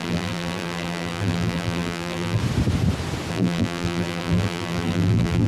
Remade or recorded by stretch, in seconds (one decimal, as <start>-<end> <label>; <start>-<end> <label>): 0.0-2.4 remade; 2.4-3.3 recorded; 3.3-5.5 remade